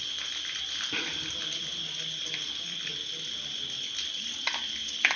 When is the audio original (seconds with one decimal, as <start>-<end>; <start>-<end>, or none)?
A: 0.0-5.2